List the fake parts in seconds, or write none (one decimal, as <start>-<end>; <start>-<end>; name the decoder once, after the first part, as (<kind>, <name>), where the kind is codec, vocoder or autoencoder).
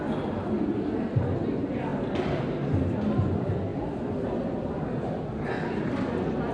3.7-4.7 (vocoder, BigVGAN v2)